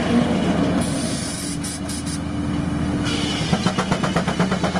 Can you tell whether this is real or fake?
real